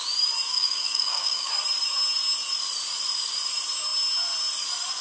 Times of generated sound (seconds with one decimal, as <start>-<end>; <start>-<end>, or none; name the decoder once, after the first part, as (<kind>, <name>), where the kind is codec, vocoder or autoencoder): 0.5-1.5 (codec, DAC)